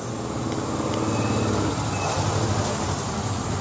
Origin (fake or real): real